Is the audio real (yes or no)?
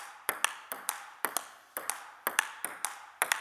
yes